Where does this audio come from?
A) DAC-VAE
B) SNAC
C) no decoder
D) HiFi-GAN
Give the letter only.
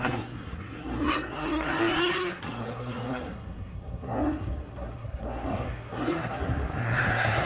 B